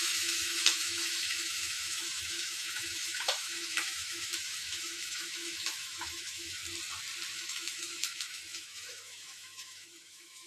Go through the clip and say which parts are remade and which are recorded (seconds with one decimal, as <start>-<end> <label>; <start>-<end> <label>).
0.0-6.6 remade; 6.6-7.3 recorded; 7.3-10.5 remade